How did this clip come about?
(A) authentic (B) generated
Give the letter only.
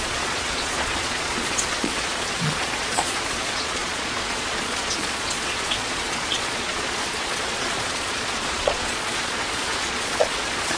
B